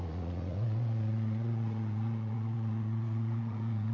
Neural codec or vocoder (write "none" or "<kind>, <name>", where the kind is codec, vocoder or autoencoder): vocoder, Vocos